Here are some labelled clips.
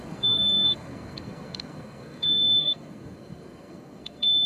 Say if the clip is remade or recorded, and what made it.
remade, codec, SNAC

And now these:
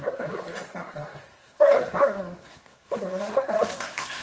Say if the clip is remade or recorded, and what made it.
remade, codec, SNAC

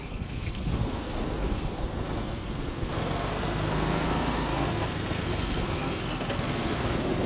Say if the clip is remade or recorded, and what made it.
remade, codec, SNAC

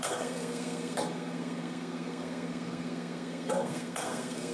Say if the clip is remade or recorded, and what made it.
remade, codec, SNAC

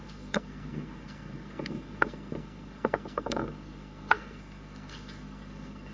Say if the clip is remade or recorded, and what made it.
remade, codec, SNAC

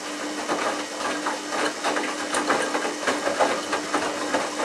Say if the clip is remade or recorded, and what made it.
recorded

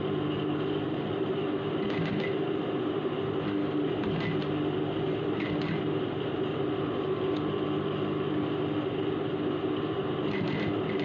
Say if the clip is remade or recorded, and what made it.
recorded